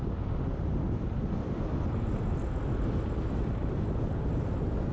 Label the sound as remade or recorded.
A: recorded